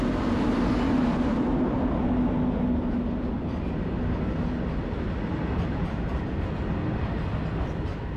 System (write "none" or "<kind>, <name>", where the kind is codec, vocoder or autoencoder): none